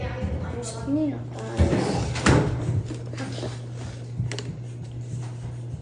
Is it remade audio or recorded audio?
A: recorded